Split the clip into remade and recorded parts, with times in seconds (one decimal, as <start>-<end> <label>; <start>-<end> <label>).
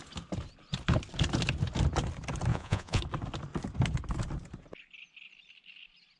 0.0-2.5 recorded; 2.5-3.0 remade; 3.0-6.2 recorded